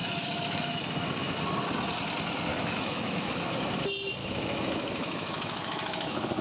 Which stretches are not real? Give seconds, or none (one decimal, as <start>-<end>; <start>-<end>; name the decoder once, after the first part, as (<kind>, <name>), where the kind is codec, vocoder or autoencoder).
0.0-1.4 (autoencoder, DAC-VAE); 2.5-3.5; 4.2-6.4